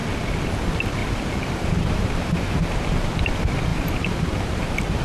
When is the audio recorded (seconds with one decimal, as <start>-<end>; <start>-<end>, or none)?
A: 0.0-1.0; 3.3-3.7